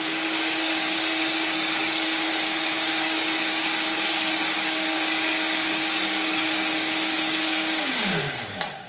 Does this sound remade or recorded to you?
remade